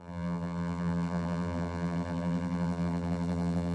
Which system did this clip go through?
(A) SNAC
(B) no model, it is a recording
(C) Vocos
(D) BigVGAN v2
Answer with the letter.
D